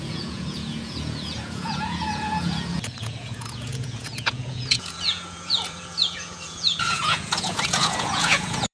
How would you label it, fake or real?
fake